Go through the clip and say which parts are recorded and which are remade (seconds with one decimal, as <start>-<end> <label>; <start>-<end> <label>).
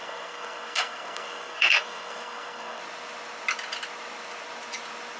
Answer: 0.0-2.8 remade; 2.8-5.2 recorded